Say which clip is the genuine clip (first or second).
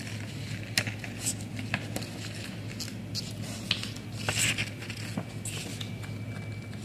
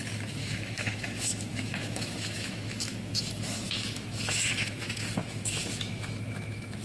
first